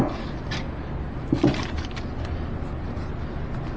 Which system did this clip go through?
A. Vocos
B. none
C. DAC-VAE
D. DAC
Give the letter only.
B